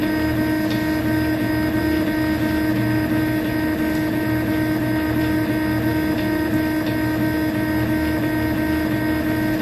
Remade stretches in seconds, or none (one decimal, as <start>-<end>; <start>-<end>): 2.7-5.5; 5.9-7.2